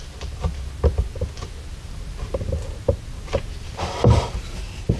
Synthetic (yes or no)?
no